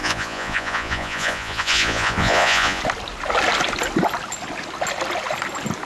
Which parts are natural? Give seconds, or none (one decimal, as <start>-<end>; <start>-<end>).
2.8-5.9